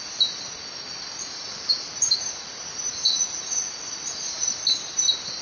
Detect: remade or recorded recorded